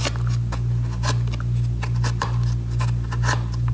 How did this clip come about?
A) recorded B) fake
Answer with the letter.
A